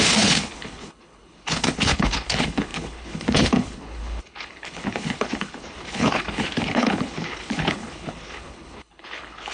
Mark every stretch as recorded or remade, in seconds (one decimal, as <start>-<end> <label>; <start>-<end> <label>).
0.0-9.5 remade